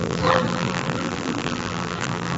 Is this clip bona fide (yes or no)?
no